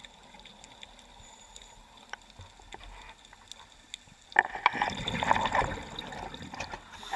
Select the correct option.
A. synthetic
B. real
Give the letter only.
B